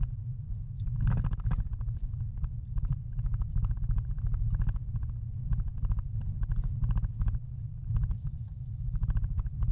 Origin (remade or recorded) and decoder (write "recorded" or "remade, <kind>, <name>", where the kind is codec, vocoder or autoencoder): recorded